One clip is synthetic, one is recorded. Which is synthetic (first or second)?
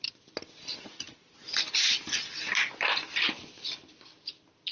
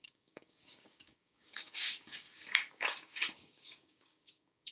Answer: second